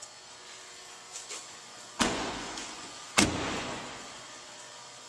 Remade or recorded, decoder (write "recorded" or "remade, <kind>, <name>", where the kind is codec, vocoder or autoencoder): remade, vocoder, Vocos